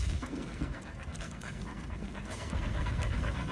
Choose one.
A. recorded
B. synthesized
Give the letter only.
B